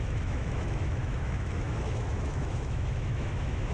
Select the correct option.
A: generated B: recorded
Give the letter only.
A